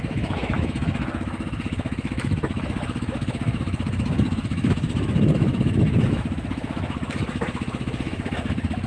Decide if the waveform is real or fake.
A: fake